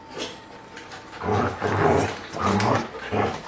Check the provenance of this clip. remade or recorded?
recorded